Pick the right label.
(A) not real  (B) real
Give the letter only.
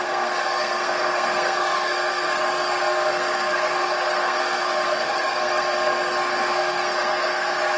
A